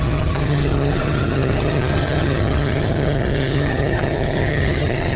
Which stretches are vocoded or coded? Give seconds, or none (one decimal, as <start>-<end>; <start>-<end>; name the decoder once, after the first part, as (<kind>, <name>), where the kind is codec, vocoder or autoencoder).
0.0-5.2 (vocoder, HiFi-GAN)